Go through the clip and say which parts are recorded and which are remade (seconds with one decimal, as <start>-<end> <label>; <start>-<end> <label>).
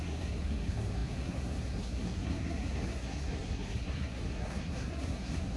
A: 0.0-5.6 remade